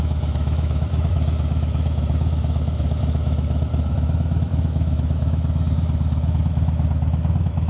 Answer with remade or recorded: remade